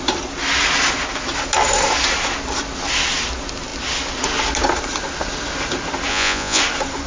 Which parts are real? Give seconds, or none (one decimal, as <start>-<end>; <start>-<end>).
0.0-6.1; 6.6-7.1